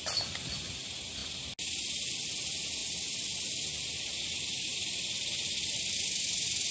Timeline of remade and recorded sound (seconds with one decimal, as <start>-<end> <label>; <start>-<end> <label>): 0.0-2.8 recorded; 2.8-6.7 remade